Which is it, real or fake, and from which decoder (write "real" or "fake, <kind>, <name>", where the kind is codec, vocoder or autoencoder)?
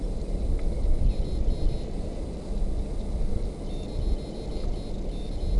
real